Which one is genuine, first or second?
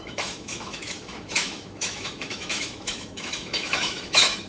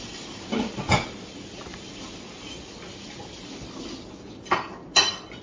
second